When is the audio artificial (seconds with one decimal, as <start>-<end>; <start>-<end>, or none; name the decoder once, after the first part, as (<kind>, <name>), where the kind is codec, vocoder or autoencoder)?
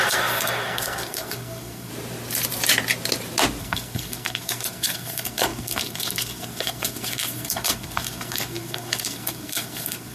0.0-1.9 (codec, SNAC); 3.6-10.1